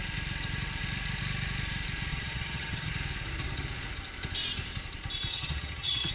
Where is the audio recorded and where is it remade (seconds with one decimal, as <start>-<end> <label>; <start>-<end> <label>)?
0.0-2.1 recorded; 2.1-2.9 remade; 2.9-5.3 recorded; 5.3-6.1 remade